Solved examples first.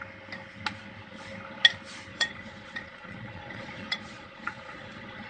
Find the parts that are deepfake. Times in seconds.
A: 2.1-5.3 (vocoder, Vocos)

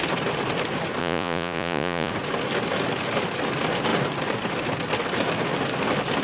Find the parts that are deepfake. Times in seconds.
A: 1.0-2.1 (vocoder, Vocos)